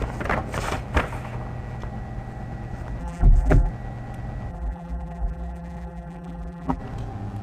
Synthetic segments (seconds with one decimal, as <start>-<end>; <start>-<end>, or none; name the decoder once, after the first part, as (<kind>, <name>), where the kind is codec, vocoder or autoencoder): 3.0-3.7 (vocoder, BigVGAN v2); 4.5-6.8